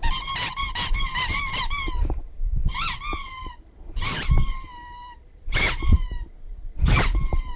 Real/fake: fake